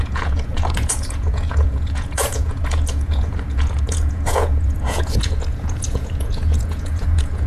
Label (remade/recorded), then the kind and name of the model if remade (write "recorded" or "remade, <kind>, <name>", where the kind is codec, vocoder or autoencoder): remade, vocoder, Vocos